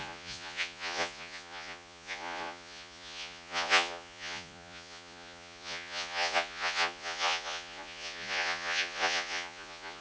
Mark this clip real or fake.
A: fake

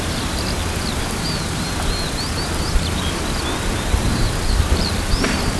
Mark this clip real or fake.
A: real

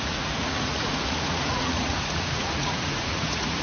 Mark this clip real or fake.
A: fake